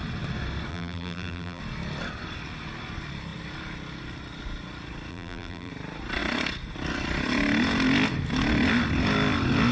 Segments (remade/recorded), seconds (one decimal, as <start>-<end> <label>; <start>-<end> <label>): 0.0-0.7 recorded; 0.7-1.6 remade; 1.6-5.1 recorded; 5.1-5.7 remade; 5.7-9.7 recorded